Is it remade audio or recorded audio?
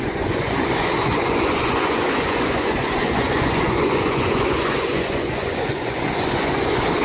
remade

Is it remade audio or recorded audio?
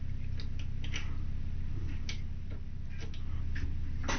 recorded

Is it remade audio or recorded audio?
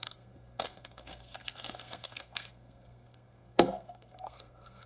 remade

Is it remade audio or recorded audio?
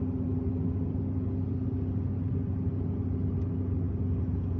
recorded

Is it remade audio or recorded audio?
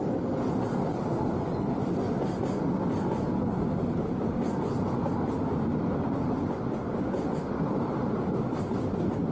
recorded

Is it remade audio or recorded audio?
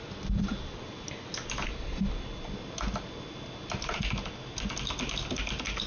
recorded